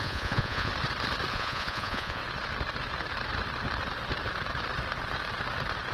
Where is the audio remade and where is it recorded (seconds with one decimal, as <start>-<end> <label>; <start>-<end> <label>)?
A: 0.0-0.7 remade; 0.7-1.3 recorded; 1.3-2.2 remade; 2.2-5.9 recorded